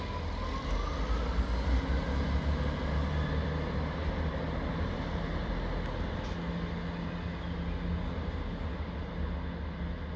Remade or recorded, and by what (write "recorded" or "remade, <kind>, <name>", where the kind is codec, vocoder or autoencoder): recorded